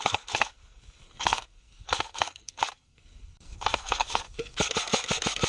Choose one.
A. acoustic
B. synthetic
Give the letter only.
B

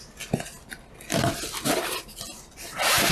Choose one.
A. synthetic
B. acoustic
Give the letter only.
B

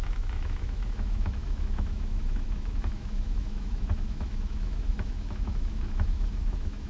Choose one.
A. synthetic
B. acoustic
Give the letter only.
A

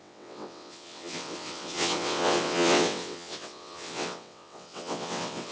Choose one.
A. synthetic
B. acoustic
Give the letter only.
A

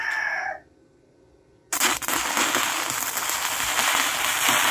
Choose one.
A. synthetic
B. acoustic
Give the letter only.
B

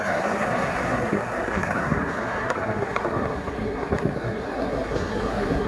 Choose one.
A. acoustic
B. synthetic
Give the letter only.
B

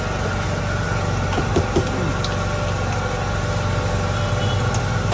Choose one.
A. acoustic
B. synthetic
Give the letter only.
A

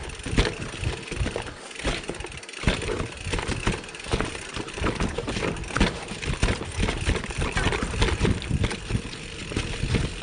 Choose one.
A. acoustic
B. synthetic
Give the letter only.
A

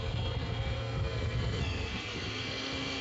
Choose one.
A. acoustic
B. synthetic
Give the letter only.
B